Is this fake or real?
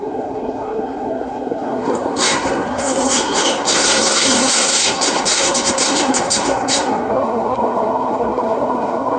fake